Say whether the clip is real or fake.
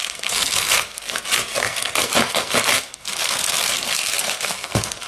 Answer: fake